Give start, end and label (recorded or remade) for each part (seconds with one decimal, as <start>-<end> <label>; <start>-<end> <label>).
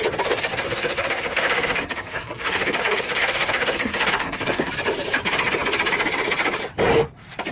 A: 0.0-0.5 recorded; 0.5-4.7 remade; 4.7-7.5 recorded